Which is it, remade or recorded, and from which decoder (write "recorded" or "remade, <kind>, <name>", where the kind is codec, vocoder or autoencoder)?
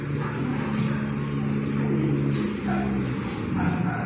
recorded